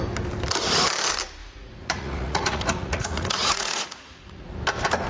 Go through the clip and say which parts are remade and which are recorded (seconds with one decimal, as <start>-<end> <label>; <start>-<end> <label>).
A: 0.0-1.4 recorded; 1.4-4.5 remade; 4.5-5.1 recorded